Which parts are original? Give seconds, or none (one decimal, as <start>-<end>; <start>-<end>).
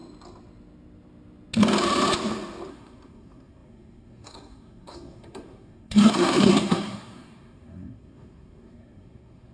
0.0-2.7